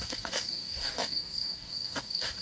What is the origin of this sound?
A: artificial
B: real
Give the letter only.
A